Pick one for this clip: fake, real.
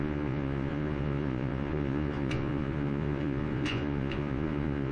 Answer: fake